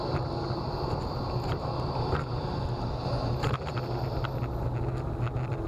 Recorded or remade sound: recorded